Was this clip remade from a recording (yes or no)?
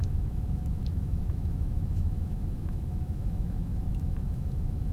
yes